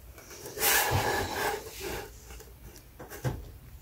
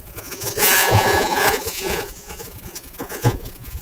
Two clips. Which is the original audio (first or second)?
first